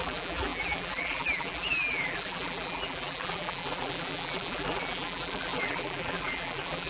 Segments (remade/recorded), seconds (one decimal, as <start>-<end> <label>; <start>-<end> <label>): 0.0-6.9 remade